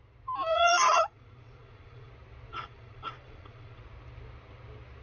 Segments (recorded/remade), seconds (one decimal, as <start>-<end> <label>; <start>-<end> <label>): 0.0-0.5 recorded; 0.5-2.1 remade; 2.1-2.5 recorded; 2.5-3.8 remade; 3.8-5.0 recorded